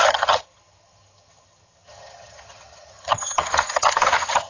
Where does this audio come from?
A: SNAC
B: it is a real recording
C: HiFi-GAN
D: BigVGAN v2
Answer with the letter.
C